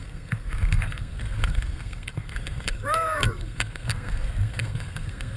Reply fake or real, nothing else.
fake